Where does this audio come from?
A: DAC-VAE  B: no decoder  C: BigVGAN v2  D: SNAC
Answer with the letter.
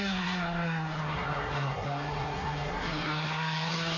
D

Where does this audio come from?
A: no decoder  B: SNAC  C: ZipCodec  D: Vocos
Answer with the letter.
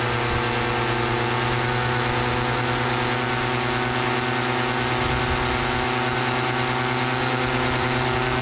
A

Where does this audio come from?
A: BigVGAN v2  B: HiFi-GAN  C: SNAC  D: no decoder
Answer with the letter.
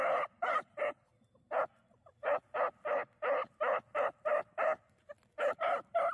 D